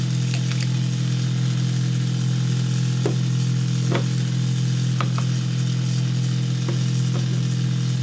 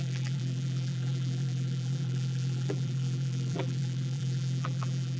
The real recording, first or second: first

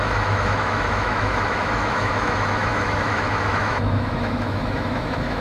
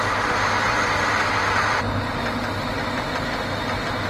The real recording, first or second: second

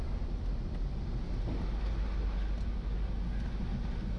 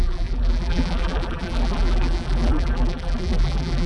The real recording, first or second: first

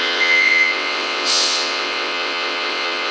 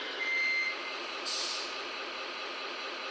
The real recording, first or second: second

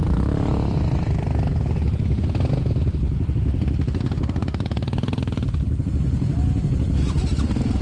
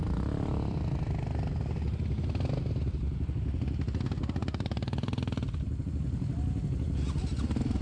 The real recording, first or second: second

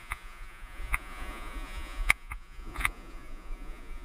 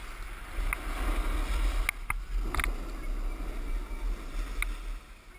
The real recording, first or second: second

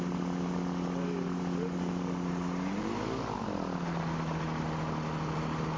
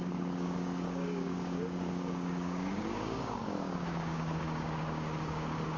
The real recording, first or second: first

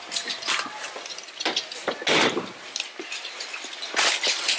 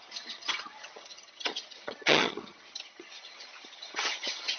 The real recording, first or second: first